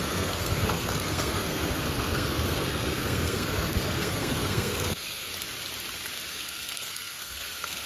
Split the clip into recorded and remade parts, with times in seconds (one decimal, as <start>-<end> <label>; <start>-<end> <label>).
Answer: 0.0-5.3 remade; 5.3-6.3 recorded; 6.3-7.9 remade